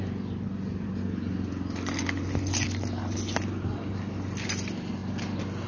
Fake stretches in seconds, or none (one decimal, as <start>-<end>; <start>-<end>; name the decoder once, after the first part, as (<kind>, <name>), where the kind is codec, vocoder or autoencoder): none